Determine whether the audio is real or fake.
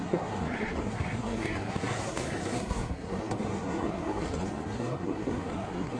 fake